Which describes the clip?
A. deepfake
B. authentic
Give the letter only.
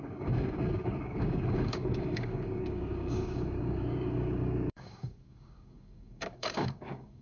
A